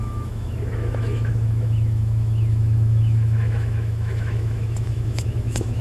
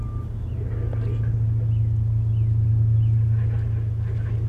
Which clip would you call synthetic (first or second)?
first